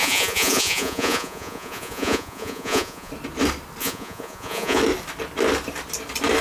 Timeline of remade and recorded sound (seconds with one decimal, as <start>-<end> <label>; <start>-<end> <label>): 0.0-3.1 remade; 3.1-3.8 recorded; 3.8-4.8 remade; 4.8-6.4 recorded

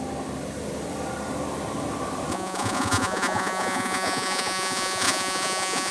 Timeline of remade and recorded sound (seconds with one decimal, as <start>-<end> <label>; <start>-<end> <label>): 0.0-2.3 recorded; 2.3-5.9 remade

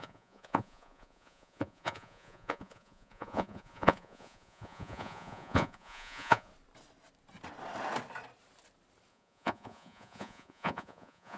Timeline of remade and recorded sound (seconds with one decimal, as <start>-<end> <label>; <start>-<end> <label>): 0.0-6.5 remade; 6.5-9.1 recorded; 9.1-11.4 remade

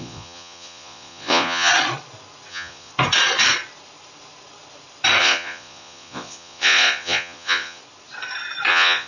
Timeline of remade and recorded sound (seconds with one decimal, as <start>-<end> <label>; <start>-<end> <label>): 0.0-1.7 remade; 1.7-2.5 recorded; 2.5-2.9 remade; 2.9-5.2 recorded; 5.2-7.8 remade; 7.8-8.7 recorded; 8.7-9.1 remade

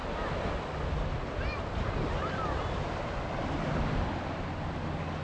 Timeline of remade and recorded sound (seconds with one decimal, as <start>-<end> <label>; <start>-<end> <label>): 0.0-5.2 recorded